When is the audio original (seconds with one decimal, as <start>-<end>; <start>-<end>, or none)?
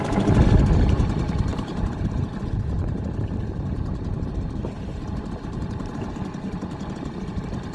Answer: 0.0-1.5; 4.8-7.7